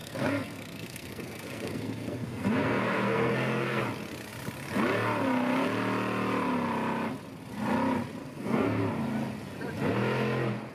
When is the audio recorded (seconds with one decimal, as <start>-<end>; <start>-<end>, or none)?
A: 3.8-8.2; 8.8-10.7